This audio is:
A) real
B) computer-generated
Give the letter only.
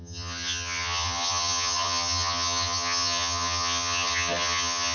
B